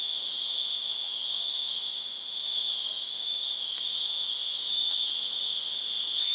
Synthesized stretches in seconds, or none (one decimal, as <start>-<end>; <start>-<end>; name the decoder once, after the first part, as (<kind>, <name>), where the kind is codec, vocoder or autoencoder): 0.0-6.3 (autoencoder, DAC-VAE)